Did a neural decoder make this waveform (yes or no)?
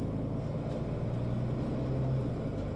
no